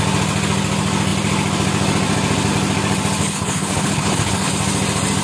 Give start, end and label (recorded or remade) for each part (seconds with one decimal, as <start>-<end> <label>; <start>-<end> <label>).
0.0-3.2 recorded; 3.2-4.5 remade; 4.5-5.2 recorded